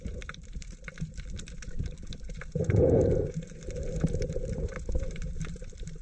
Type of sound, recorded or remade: remade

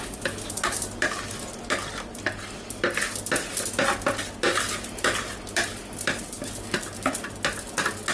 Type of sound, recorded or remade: recorded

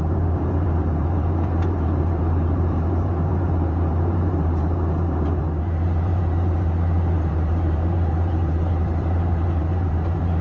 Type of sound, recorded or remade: remade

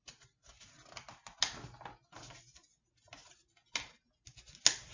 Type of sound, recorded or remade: recorded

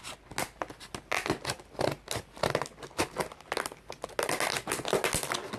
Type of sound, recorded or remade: recorded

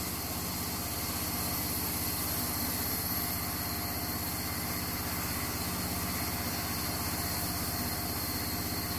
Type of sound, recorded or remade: recorded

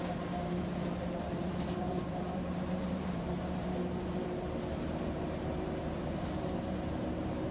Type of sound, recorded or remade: remade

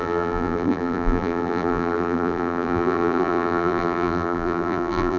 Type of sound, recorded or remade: remade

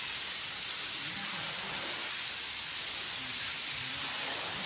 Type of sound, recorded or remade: recorded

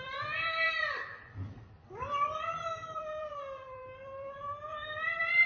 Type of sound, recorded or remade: remade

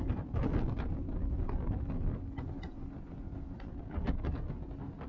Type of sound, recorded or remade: recorded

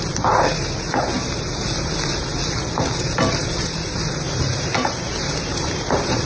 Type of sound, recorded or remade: remade